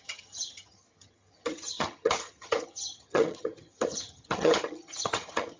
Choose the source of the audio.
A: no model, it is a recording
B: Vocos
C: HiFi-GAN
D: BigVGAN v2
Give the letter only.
C